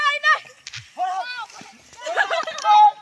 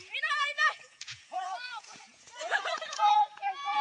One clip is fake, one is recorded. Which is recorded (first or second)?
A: first